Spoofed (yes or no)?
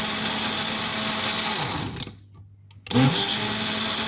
no